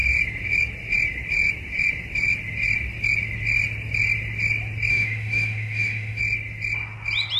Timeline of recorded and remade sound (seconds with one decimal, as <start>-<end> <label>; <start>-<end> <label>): 0.0-4.9 recorded; 4.9-6.2 remade; 6.2-7.4 recorded